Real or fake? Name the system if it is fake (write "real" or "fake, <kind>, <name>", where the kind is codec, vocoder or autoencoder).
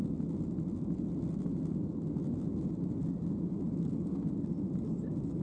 real